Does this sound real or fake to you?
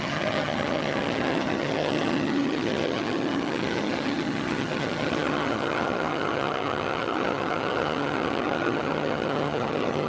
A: fake